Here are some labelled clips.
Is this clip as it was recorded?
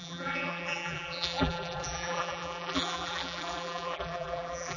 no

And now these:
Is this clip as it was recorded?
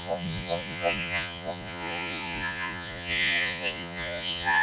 no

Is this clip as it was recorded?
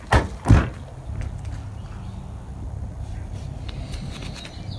yes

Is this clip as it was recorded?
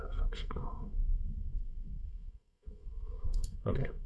no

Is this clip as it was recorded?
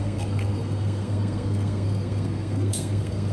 no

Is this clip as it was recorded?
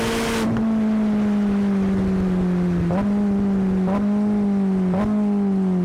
yes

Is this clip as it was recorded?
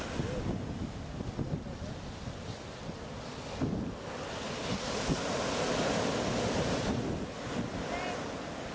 yes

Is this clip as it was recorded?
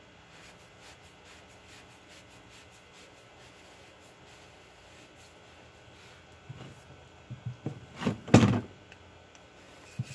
yes